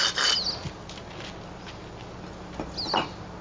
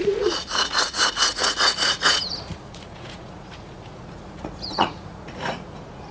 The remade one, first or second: second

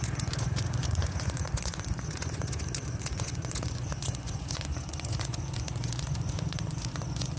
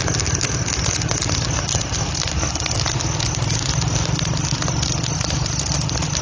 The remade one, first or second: first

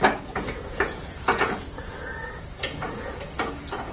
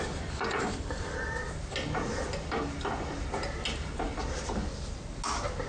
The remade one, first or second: first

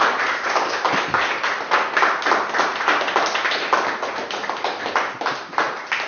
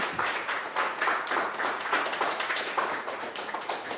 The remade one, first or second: second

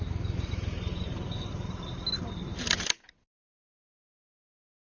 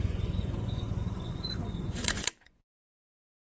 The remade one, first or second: second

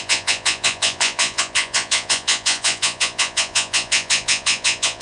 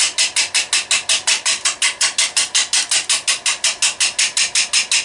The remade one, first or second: first